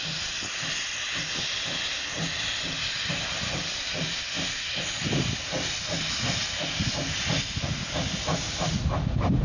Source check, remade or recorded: recorded